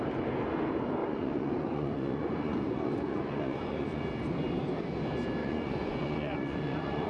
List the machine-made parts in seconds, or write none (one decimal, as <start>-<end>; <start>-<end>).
1.0-4.0; 5.4-7.1

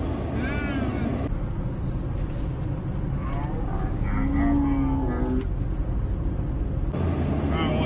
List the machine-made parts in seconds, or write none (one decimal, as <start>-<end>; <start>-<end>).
none

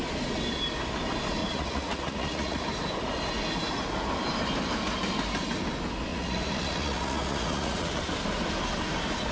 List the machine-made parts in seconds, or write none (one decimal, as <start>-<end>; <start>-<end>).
1.4-2.6; 6.1-8.0